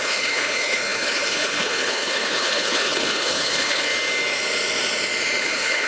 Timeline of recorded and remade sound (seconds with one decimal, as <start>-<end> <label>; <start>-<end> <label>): 0.0-3.9 remade; 3.9-5.4 recorded; 5.4-5.9 remade